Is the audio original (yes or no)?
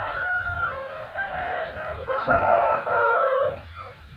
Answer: no